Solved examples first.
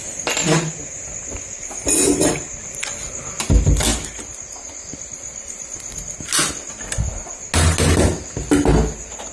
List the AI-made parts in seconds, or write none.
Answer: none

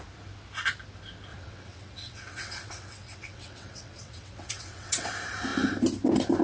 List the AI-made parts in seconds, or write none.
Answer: 1.3-5.1 (vocoder, WaveNeXt)